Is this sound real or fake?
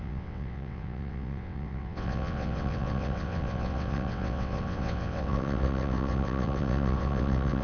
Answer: fake